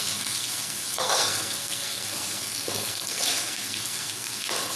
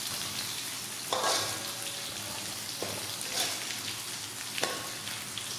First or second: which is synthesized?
first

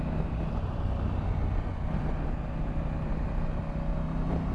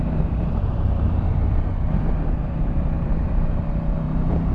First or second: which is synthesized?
second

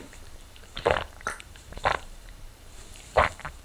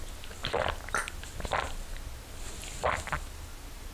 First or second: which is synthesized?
first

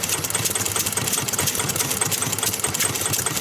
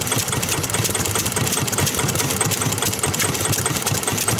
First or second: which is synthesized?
second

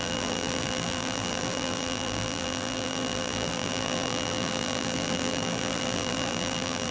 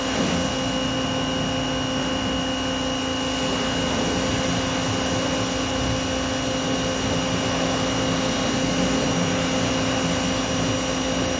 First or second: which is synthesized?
first